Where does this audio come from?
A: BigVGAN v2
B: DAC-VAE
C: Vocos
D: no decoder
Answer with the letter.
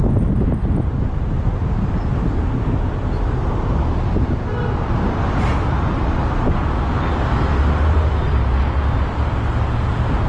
D